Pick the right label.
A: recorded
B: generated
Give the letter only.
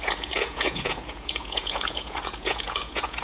B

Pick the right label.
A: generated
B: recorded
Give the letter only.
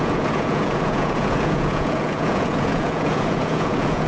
A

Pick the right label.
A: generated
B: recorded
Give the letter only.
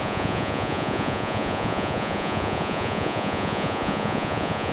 A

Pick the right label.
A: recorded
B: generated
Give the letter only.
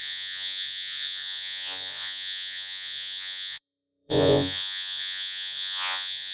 B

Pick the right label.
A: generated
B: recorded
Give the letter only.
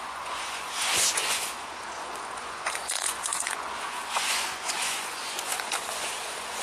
A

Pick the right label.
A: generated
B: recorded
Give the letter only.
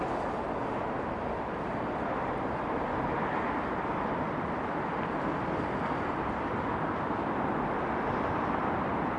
B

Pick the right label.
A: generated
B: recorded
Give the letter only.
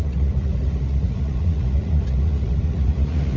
A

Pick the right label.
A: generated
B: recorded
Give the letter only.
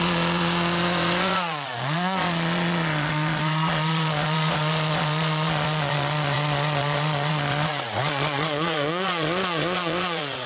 A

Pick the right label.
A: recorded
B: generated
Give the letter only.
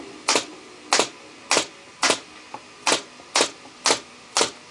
A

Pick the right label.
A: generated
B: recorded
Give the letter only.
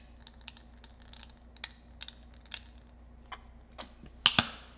B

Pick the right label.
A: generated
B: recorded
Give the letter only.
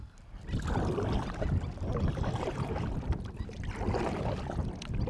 B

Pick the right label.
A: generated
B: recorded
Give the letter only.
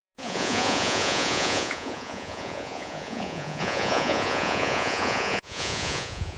A